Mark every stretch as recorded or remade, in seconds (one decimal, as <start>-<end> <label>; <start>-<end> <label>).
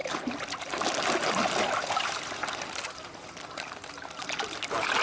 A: 0.0-5.0 recorded